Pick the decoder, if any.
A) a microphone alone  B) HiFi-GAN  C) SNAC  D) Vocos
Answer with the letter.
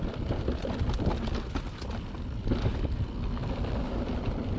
A